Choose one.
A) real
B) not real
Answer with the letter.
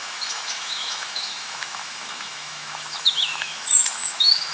B